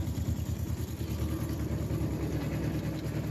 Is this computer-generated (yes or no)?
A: no